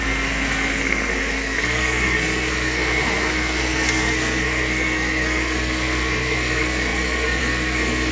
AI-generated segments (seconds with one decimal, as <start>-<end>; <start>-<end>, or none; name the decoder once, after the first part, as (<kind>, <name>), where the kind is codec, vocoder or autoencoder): 0.0-8.1 (codec, SNAC)